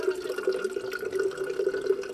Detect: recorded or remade recorded